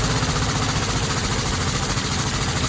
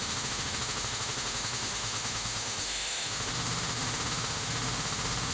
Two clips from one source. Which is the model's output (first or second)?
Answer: second